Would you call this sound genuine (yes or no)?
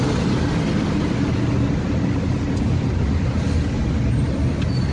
yes